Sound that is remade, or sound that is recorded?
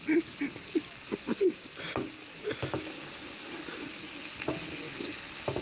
recorded